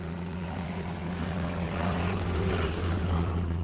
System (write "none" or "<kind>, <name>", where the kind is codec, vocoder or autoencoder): vocoder, WaveNeXt